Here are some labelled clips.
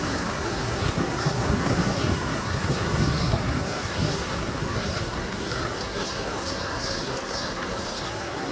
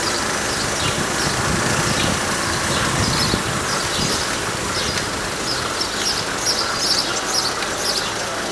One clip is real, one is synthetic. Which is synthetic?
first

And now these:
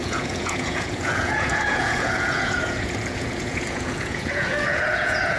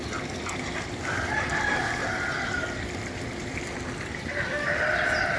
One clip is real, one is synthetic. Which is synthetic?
first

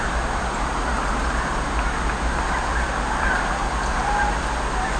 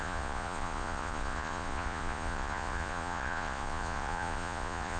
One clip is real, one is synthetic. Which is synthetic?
second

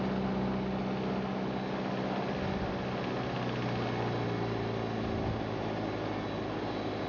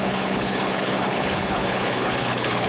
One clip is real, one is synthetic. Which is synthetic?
second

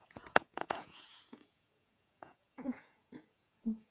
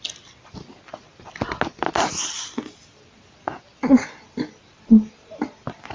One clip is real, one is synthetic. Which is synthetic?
first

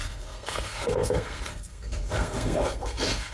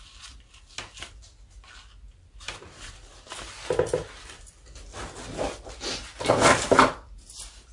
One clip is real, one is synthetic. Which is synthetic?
first